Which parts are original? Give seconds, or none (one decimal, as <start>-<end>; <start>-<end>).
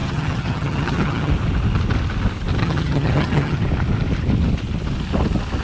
1.3-2.6; 3.6-5.6